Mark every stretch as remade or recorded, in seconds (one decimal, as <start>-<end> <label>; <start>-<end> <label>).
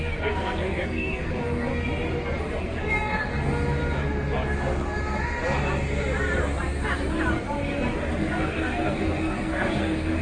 0.0-1.7 remade; 1.7-2.6 recorded; 2.6-3.3 remade; 3.3-8.1 recorded; 8.1-10.2 remade